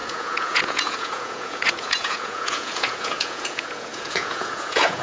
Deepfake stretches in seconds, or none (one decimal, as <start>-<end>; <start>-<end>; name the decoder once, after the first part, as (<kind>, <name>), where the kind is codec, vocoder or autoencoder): 0.0-5.0 (vocoder, Vocos)